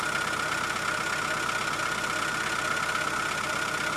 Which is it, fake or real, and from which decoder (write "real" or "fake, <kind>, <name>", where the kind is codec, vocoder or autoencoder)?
real